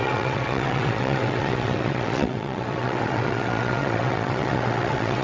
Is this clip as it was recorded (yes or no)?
no